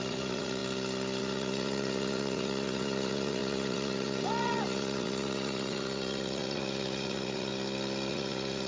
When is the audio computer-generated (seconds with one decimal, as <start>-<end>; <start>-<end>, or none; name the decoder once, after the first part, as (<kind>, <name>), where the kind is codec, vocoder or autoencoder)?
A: 0.0-0.6 (vocoder, Vocos); 1.2-7.5; 8.1-8.7